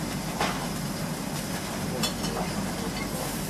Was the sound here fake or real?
real